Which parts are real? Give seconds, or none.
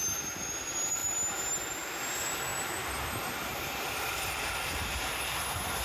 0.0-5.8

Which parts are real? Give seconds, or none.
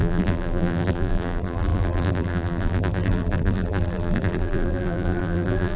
none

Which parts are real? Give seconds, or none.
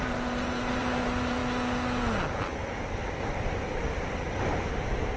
1.4-4.5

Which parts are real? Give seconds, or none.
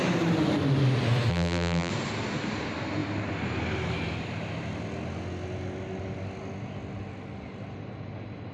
0.0-1.3; 1.9-8.5